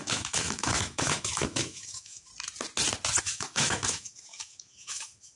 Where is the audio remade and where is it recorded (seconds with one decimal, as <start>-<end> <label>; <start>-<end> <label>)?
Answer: 0.0-2.3 remade; 2.3-3.2 recorded; 3.2-5.4 remade